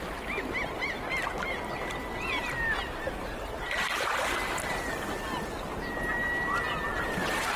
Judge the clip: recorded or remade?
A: recorded